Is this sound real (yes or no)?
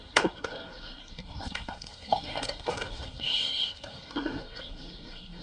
no